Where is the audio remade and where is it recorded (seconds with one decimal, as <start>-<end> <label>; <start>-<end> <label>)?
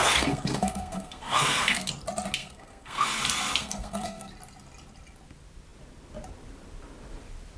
0.0-1.9 remade; 1.9-2.4 recorded; 2.4-3.2 remade; 3.2-3.6 recorded; 3.6-4.3 remade; 4.3-7.6 recorded